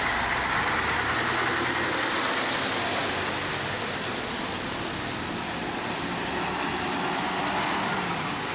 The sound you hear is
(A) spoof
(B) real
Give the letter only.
B